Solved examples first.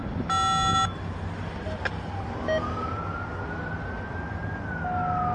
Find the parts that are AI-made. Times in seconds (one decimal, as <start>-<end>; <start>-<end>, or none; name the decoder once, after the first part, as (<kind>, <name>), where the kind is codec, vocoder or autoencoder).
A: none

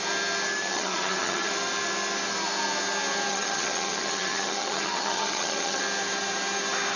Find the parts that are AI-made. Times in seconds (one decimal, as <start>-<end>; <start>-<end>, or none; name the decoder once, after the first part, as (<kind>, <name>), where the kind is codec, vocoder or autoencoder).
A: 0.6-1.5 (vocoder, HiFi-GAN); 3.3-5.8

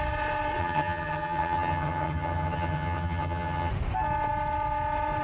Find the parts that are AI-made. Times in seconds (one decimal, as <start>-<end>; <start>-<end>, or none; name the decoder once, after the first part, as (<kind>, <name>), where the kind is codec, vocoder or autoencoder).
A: 0.6-3.7 (vocoder, HiFi-GAN)